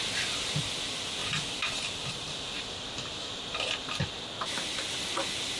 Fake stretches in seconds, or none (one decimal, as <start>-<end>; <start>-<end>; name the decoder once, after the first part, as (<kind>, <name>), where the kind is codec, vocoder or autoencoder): 1.2-2.1 (vocoder, BigVGAN v2)